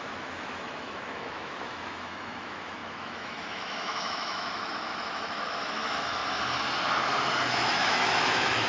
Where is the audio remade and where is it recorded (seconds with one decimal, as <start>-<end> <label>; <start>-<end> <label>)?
0.0-6.2 remade; 6.2-7.5 recorded; 7.5-8.7 remade